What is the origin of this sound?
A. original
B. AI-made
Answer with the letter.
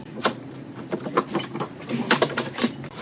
B